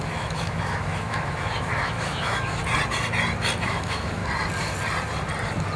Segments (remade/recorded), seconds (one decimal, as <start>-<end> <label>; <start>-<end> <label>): 0.0-2.6 remade; 2.6-3.6 recorded; 3.6-4.2 remade; 4.2-5.8 recorded